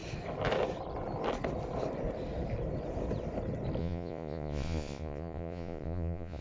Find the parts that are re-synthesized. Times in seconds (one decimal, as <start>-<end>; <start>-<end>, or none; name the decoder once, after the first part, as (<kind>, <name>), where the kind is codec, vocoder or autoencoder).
3.8-6.4 (vocoder, Vocos)